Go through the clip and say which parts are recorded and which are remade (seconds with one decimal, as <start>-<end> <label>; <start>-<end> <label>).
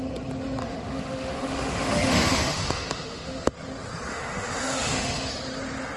0.0-0.6 recorded; 0.6-3.5 remade; 3.5-4.1 recorded; 4.1-5.3 remade; 5.3-6.0 recorded